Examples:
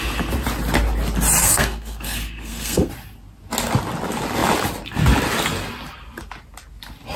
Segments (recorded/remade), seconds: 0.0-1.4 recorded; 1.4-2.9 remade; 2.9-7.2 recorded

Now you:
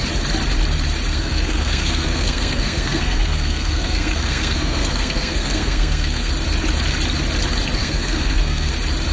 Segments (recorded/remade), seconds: 0.0-1.1 recorded; 1.1-6.3 remade; 6.3-7.8 recorded; 7.8-8.7 remade; 8.7-9.1 recorded

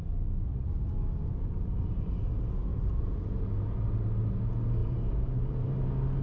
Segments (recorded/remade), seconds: 0.0-2.7 recorded; 2.7-3.3 remade; 3.3-4.8 recorded; 4.8-5.8 remade; 5.8-6.2 recorded

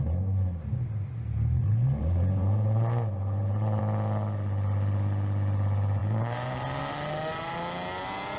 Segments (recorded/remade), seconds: 0.0-0.8 recorded; 0.8-3.8 remade; 3.8-6.0 recorded; 6.0-6.8 remade; 6.8-8.4 recorded

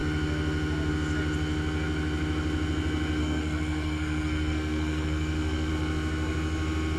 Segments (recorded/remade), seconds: 0.0-3.2 recorded; 3.2-5.7 remade; 5.7-7.0 recorded

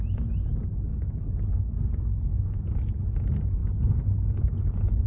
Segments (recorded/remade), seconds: 0.0-5.1 recorded